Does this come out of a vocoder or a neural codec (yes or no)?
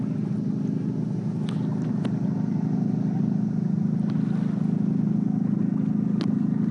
no